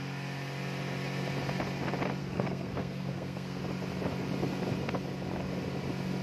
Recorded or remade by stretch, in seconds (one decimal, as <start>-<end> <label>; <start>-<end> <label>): 0.0-2.2 recorded; 2.2-3.6 remade; 3.6-6.2 recorded